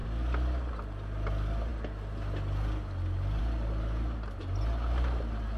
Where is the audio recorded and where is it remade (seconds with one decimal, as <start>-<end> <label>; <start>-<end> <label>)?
0.0-5.6 recorded